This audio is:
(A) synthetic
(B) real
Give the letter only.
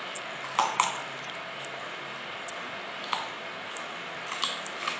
B